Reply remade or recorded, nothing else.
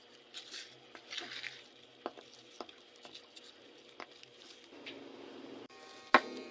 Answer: recorded